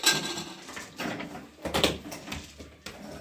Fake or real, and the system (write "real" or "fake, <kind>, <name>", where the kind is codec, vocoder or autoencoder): real